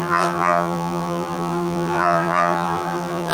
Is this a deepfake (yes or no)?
yes